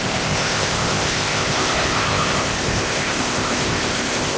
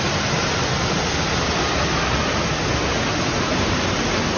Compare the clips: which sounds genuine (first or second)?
second